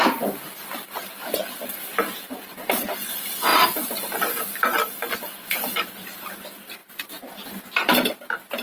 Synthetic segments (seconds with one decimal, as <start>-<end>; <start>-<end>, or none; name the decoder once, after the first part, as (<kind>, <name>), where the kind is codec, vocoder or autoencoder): none